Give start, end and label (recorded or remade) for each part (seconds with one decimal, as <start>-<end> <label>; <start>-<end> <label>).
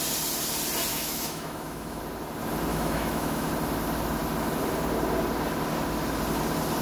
0.0-0.9 recorded; 0.9-2.0 remade; 2.0-2.7 recorded; 2.7-3.5 remade; 3.5-6.8 recorded